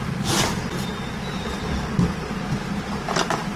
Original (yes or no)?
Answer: yes